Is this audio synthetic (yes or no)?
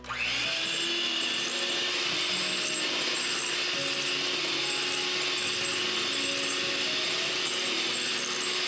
no